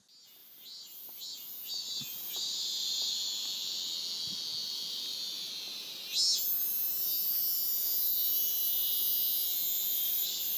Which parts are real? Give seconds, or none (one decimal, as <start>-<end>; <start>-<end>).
0.0-0.4; 2.0-4.6; 5.5-10.6